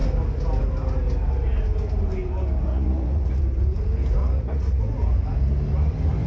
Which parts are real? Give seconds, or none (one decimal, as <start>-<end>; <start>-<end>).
0.0-2.7; 3.4-4.2; 4.8-6.3